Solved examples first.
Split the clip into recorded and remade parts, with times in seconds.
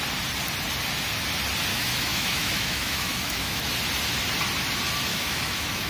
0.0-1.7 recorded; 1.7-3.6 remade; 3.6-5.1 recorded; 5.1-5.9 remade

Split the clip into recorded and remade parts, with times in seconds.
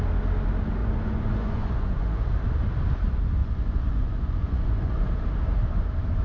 0.0-0.8 recorded; 0.8-2.3 remade; 2.3-3.4 recorded; 3.4-5.1 remade; 5.1-6.2 recorded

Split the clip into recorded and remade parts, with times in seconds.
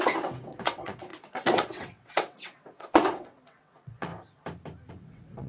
0.0-4.1 remade; 4.1-4.9 recorded; 4.9-5.5 remade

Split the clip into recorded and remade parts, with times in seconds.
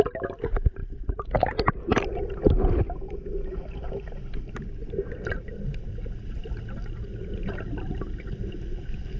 0.0-9.2 recorded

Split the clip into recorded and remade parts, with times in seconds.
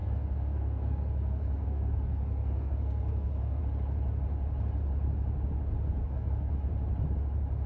0.0-3.6 remade; 3.6-6.0 recorded; 6.0-6.5 remade; 6.5-7.7 recorded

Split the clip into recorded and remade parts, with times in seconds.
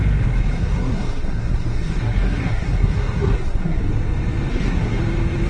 0.0-0.5 recorded; 0.5-3.8 remade; 3.8-4.5 recorded; 4.5-5.0 remade; 5.0-5.5 recorded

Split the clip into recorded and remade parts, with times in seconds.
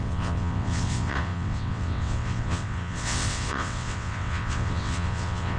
0.0-5.6 remade